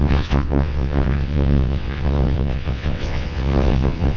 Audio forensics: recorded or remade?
remade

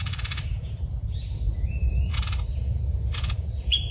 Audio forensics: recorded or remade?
remade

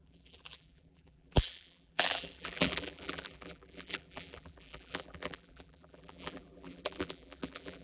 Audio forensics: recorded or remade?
remade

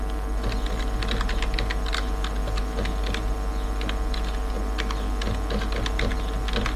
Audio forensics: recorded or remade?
recorded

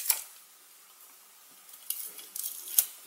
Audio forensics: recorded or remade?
recorded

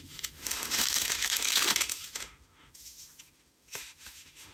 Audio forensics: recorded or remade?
remade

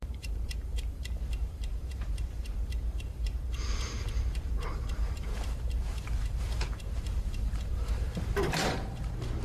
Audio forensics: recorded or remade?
remade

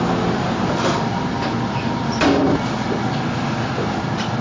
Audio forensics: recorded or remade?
recorded